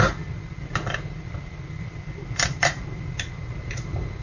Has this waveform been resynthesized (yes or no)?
yes